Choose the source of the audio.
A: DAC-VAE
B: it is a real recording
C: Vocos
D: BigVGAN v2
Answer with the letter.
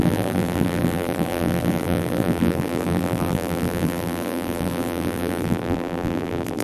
D